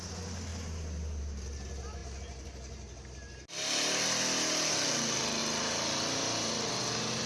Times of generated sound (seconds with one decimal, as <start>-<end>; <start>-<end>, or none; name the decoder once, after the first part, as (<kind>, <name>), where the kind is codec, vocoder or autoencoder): 5.4-7.3 (vocoder, BigVGAN v2)